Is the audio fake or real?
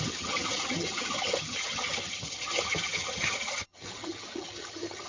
fake